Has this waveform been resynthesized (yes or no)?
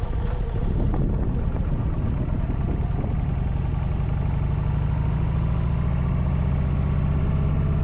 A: no